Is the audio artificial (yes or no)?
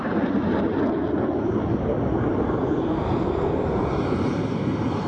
no